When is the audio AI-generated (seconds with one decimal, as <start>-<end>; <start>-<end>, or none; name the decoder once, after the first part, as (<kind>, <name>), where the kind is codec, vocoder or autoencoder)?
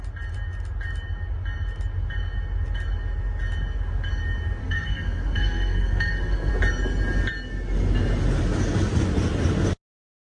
4.6-6.5 (codec, SNAC)